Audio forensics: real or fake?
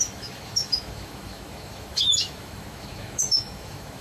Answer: fake